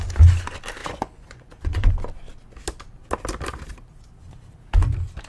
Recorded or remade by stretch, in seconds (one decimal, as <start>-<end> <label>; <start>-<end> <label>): 0.0-0.8 recorded; 0.8-1.9 remade; 1.9-5.3 recorded